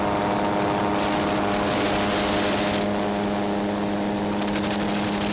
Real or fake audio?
real